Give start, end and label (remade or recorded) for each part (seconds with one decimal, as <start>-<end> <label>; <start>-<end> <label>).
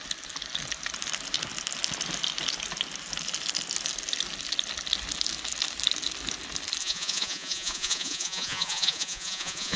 0.0-6.8 recorded; 6.8-9.8 remade